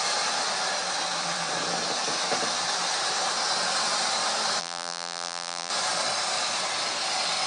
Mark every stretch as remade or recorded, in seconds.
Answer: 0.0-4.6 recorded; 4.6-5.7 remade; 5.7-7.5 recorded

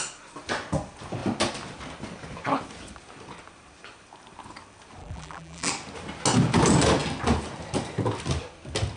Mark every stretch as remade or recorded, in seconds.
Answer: 0.0-5.0 recorded; 5.0-5.7 remade; 5.7-9.0 recorded

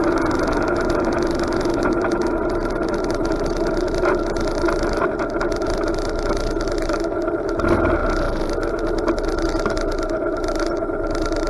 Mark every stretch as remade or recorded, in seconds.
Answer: 0.0-11.5 recorded

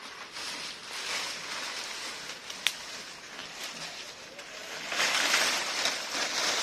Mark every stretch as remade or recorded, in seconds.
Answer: 0.0-1.4 remade; 1.4-3.4 recorded; 3.4-6.6 remade

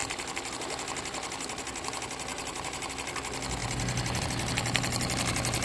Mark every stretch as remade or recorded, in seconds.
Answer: 0.0-2.3 recorded; 2.3-2.9 remade; 2.9-5.6 recorded

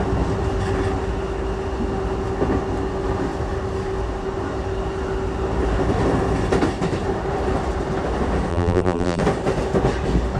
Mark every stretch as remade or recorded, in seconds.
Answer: 0.0-8.5 recorded; 8.5-9.2 remade; 9.2-10.4 recorded